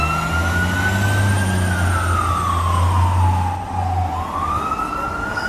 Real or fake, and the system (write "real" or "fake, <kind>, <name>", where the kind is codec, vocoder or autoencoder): real